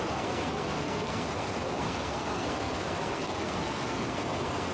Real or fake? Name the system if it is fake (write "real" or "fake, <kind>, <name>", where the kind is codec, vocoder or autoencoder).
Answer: fake, codec, SNAC